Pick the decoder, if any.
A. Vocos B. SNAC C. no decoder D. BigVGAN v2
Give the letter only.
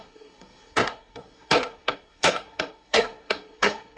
B